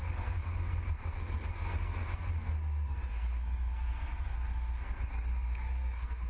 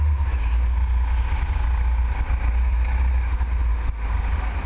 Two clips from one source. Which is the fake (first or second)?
first